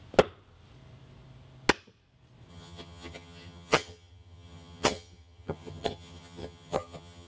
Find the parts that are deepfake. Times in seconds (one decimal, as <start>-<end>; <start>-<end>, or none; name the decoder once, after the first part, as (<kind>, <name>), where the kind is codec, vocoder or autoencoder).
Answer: 2.5-7.3 (vocoder, HiFi-GAN)